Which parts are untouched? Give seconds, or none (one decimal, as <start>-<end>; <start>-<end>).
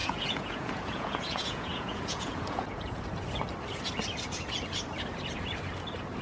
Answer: 3.0-6.2